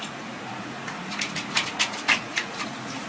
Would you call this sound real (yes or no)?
no